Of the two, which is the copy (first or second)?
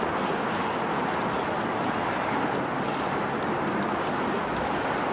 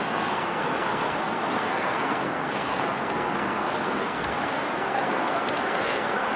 second